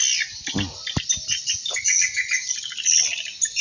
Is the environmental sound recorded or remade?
recorded